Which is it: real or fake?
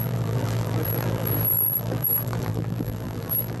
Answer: fake